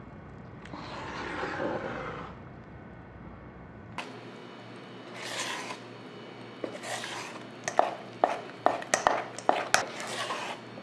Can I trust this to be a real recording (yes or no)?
yes